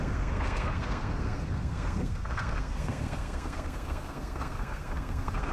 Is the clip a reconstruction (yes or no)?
yes